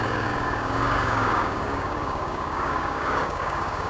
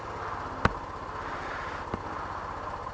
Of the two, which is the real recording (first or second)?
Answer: second